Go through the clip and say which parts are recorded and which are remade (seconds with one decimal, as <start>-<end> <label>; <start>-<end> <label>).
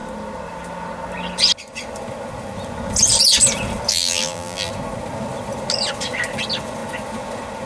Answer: 0.0-3.9 recorded; 3.9-4.7 remade; 4.7-7.7 recorded